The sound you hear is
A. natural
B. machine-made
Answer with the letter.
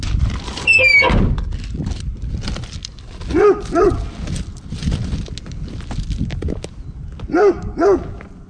A